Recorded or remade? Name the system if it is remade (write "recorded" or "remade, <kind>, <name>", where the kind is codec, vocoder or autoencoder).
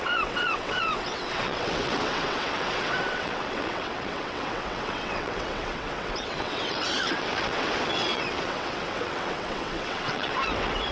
remade, vocoder, WaveNeXt